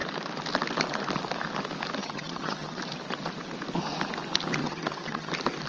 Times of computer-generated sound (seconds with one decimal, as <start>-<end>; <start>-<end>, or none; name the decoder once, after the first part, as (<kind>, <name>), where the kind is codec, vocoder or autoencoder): 2.0-2.8 (vocoder, HiFi-GAN); 4.6-5.3